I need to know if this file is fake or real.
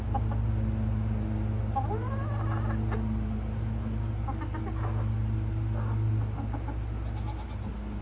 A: real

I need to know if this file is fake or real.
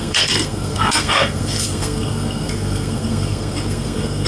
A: fake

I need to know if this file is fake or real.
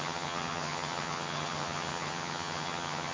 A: fake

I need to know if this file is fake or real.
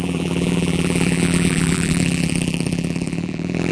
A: fake